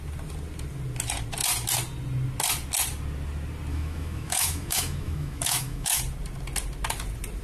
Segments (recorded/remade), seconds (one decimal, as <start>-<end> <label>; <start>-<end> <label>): 0.0-3.7 recorded; 3.7-6.0 remade; 6.0-7.4 recorded